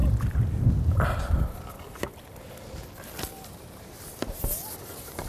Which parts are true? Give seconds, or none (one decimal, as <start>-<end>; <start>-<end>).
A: 2.6-5.3